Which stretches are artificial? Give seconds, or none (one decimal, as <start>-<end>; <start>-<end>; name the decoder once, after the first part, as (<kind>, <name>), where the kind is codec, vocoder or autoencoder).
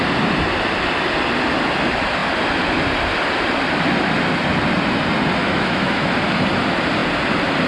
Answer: 5.4-6.0 (autoencoder, DAC-VAE)